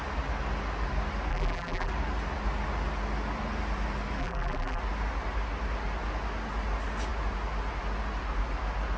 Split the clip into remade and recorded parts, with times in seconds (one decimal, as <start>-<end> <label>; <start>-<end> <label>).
0.0-1.3 recorded; 1.3-1.9 remade; 1.9-4.2 recorded; 4.2-4.8 remade; 4.8-9.0 recorded